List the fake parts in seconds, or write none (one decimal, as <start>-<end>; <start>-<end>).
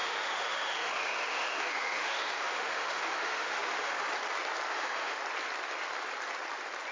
0.0-4.1; 4.7-5.2